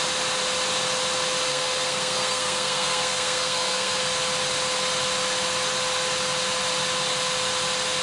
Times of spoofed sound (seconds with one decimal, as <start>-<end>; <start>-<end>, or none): 1.5-4.0

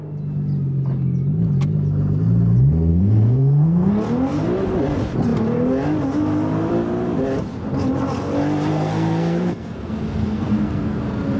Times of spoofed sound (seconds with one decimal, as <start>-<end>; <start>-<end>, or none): 2.9-3.9; 8.7-11.0

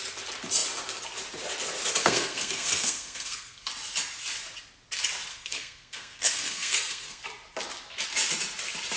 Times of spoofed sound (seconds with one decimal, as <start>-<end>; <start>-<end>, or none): 2.0-3.7; 5.3-7.2

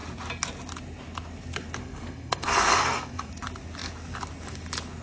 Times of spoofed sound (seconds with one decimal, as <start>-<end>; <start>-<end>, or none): 1.8-3.3